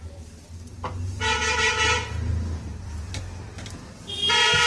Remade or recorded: recorded